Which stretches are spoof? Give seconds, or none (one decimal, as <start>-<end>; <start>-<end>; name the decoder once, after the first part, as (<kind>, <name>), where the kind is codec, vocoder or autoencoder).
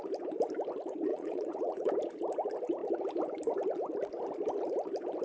1.1-1.9 (vocoder, Vocos)